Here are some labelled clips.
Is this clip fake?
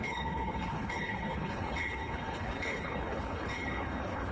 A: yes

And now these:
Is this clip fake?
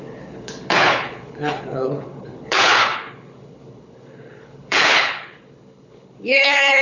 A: yes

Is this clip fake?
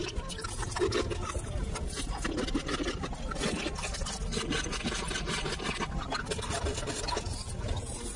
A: no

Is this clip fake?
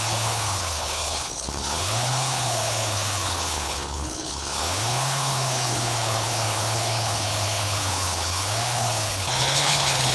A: yes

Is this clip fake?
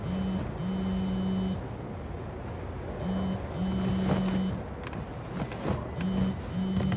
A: no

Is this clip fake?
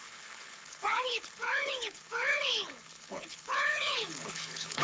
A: yes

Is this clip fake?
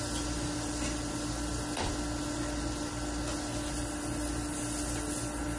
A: no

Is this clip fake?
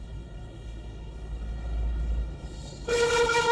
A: yes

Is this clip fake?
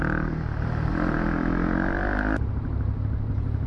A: no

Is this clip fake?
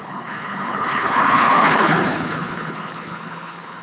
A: yes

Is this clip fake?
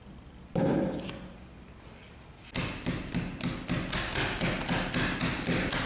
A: no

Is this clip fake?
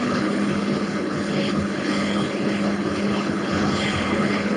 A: yes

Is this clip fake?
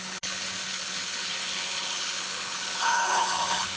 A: yes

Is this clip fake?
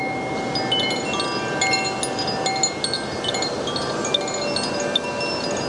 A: no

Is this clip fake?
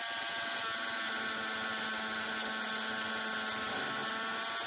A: no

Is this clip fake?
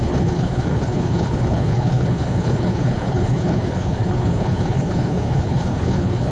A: yes